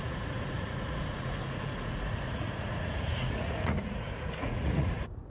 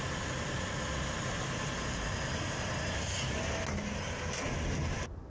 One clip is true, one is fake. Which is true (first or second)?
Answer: second